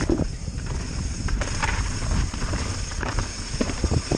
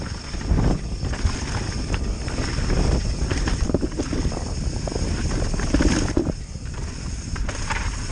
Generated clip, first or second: first